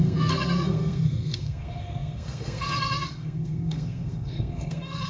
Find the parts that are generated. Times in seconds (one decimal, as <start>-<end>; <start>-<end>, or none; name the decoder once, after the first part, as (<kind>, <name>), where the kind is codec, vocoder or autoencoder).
0.0-5.1 (codec, SNAC)